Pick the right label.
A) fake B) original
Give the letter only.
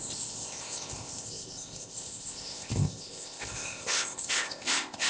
A